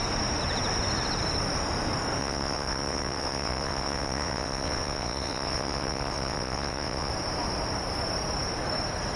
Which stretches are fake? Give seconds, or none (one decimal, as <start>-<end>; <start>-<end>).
2.2-7.1